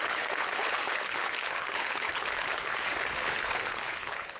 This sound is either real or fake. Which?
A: fake